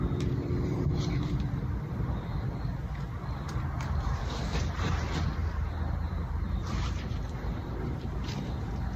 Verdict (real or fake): fake